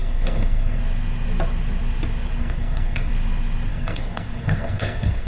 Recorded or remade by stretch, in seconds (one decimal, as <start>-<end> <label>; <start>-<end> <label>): 0.0-0.8 remade; 0.8-2.4 recorded; 2.4-3.1 remade; 3.1-3.7 recorded; 3.7-5.3 remade